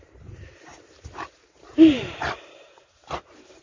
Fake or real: fake